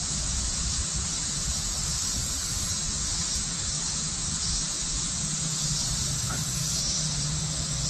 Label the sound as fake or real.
fake